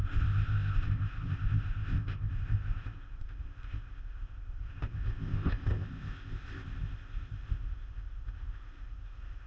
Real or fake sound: fake